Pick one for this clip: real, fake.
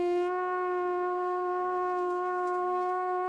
fake